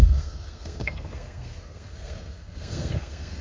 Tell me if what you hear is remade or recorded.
remade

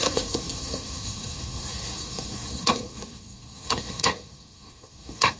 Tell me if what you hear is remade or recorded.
remade